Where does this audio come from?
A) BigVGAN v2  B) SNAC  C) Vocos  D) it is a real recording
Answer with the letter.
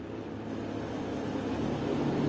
D